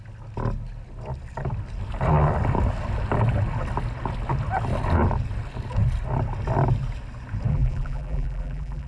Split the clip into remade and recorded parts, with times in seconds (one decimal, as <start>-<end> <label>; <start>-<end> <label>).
0.0-7.5 recorded; 7.5-8.9 remade